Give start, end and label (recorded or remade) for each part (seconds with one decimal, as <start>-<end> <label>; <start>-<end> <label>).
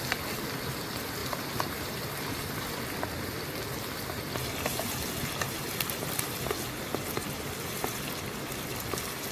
0.0-1.2 recorded; 1.2-2.5 remade; 2.5-9.3 recorded